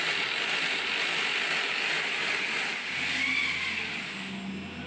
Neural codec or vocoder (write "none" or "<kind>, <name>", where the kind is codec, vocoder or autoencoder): none